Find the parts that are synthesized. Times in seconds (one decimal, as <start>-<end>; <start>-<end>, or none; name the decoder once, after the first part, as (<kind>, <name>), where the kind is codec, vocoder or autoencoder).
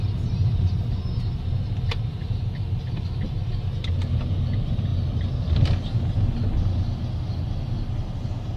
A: none